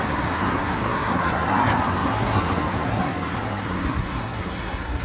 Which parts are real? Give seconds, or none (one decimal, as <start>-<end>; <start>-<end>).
none